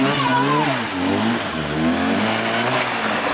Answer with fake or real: real